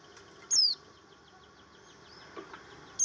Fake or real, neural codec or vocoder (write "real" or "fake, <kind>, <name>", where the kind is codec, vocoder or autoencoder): real